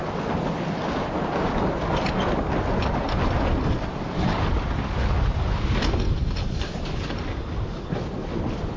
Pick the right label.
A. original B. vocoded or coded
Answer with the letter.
A